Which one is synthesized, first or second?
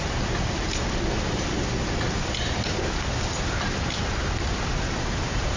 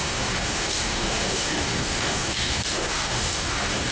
second